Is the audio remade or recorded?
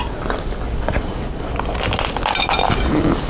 recorded